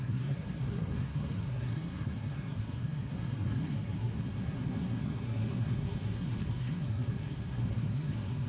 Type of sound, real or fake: fake